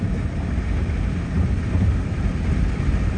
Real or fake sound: real